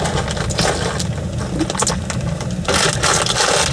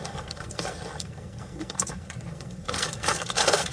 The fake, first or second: second